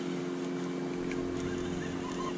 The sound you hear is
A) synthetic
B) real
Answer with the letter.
B